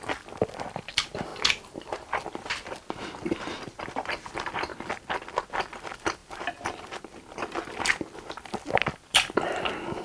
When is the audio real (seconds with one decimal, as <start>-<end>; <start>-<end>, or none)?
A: 1.3-1.8; 4.7-5.5